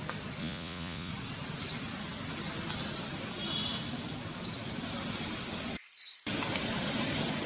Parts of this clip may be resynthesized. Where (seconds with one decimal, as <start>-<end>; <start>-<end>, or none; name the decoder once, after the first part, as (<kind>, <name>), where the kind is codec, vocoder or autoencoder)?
0.4-1.1 (vocoder, Vocos)